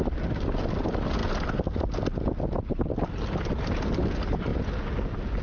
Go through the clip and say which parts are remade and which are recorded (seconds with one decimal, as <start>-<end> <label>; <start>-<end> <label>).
0.0-5.4 recorded